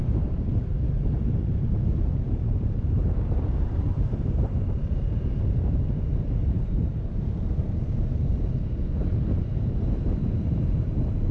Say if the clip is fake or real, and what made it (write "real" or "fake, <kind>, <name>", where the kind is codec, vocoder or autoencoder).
fake, vocoder, BigVGAN v2